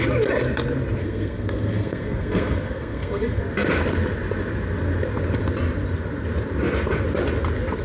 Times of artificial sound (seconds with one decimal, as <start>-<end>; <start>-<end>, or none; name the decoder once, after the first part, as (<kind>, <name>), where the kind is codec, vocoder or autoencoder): 1.0-3.4 (codec, SNAC)